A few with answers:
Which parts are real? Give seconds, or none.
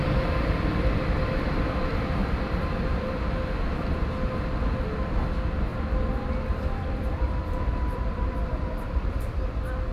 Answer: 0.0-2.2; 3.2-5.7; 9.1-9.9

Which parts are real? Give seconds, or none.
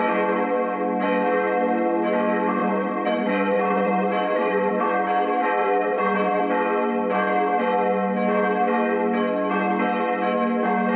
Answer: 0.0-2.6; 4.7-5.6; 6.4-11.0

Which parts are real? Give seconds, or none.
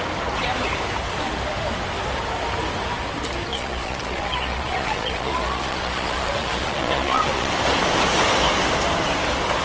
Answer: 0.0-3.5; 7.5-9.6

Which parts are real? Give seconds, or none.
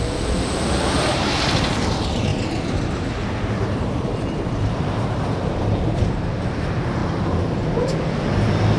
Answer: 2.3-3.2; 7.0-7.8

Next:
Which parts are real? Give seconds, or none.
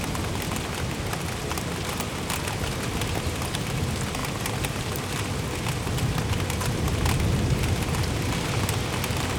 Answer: 0.0-4.2; 4.9-9.4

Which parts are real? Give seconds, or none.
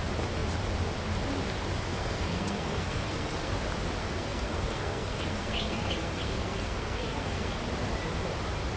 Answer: 0.0-1.9; 3.5-4.0; 7.6-8.8